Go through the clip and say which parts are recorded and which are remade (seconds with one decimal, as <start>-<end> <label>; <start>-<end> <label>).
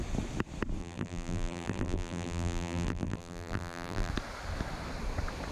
0.0-0.8 recorded; 0.8-4.1 remade; 4.1-5.5 recorded